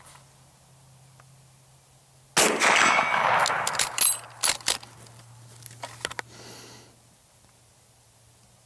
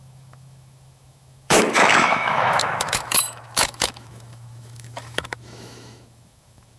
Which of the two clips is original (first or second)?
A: first